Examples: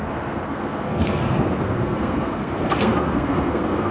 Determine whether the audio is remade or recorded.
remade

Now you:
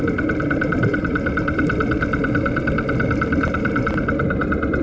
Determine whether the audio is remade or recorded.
recorded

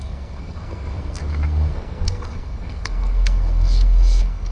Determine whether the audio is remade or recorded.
remade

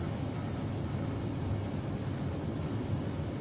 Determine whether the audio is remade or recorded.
recorded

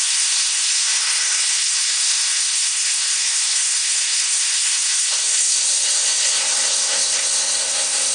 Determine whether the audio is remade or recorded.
remade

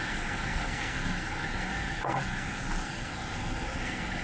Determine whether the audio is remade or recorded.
remade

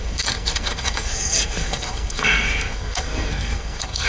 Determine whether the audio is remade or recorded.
remade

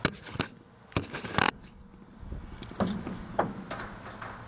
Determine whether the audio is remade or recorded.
recorded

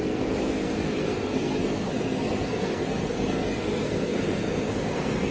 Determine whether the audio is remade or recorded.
remade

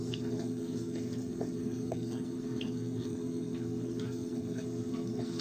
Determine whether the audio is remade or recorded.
remade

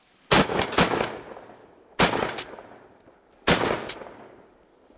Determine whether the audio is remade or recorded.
recorded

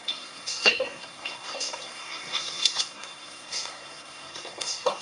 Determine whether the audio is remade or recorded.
remade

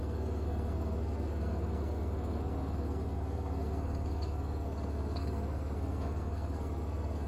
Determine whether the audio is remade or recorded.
remade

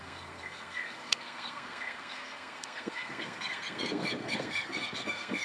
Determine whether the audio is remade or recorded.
remade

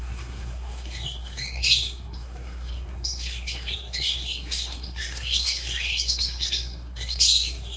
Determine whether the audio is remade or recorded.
remade